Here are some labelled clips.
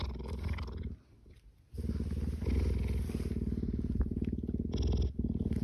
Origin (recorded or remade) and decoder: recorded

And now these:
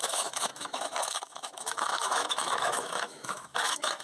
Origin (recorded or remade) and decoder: remade, autoencoder, DAC-VAE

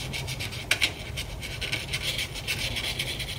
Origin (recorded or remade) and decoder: recorded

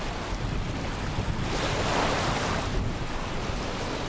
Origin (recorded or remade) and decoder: recorded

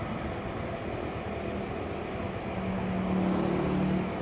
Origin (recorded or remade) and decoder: recorded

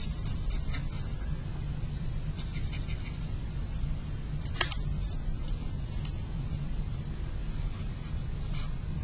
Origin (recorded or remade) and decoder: remade, vocoder, BigVGAN v2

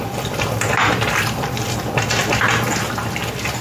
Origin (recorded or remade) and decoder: remade, vocoder, BigVGAN v2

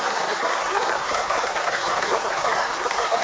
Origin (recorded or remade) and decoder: remade, codec, SNAC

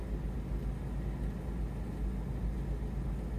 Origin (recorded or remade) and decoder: recorded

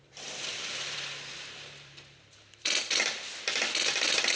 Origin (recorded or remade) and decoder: remade, vocoder, BigVGAN v2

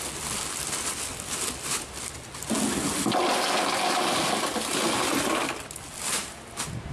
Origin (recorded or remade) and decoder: recorded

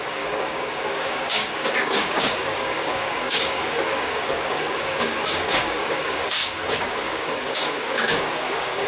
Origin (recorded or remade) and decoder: remade, codec, DAC